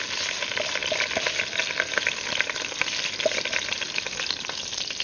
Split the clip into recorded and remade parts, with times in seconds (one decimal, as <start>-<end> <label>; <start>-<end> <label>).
0.0-5.0 recorded